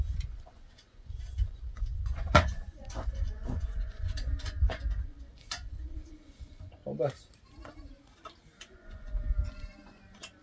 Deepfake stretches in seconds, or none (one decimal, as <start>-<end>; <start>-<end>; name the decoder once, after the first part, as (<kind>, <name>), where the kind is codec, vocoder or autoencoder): 0.0-6.8 (vocoder, Vocos); 8.6-10.4